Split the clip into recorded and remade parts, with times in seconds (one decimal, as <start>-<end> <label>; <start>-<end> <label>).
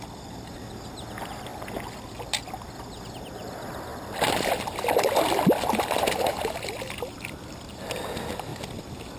0.0-9.2 recorded